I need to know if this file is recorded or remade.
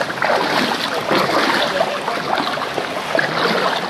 recorded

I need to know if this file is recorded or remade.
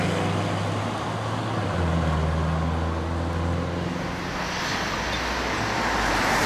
recorded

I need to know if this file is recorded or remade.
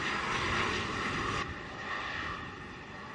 remade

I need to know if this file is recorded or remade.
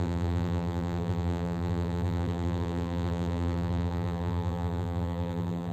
remade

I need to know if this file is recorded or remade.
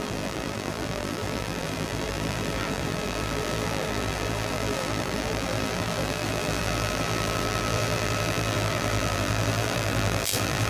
remade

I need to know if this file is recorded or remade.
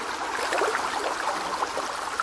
recorded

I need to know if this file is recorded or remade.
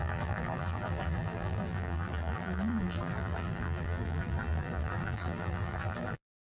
remade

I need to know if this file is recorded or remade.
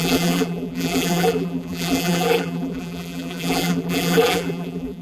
remade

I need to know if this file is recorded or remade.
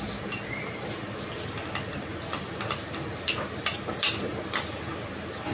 recorded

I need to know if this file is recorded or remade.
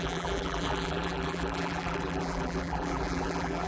remade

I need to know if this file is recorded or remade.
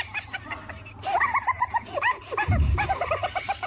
remade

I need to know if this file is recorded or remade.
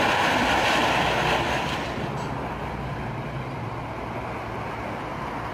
recorded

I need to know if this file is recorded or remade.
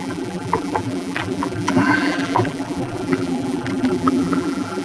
remade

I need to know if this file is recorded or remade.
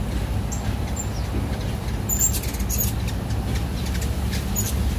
recorded